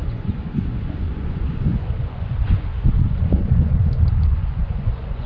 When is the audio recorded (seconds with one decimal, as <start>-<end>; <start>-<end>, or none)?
none